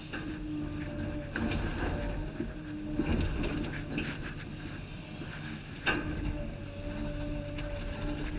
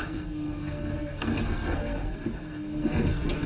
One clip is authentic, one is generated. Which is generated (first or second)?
second